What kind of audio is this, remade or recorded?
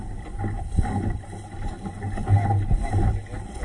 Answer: recorded